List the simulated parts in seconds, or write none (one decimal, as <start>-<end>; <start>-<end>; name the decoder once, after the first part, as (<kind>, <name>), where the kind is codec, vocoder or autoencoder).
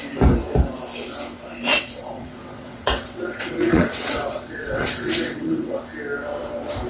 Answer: 1.7-5.8 (vocoder, WaveNeXt)